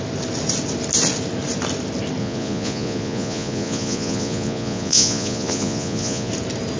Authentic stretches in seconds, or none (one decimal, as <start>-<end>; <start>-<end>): 0.0-2.2; 6.3-6.8